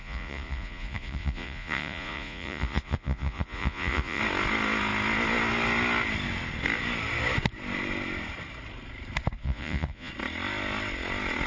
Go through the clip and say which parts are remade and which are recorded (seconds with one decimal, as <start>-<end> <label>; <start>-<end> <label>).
0.0-4.2 remade; 4.2-9.4 recorded; 9.4-10.1 remade; 10.1-11.5 recorded